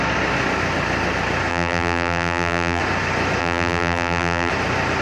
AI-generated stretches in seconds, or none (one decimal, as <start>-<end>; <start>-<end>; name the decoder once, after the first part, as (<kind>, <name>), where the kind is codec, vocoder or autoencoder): 1.5-2.8 (vocoder, BigVGAN v2); 3.4-4.5